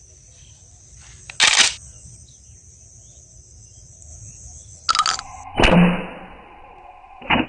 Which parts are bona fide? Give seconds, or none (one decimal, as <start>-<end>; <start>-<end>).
0.0-7.5